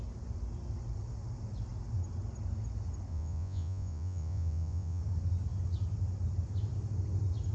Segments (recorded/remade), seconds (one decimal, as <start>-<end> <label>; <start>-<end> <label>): 0.0-3.1 recorded; 3.1-5.0 remade; 5.0-7.5 recorded